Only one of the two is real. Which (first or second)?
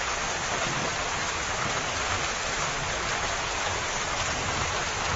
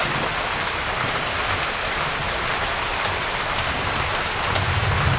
first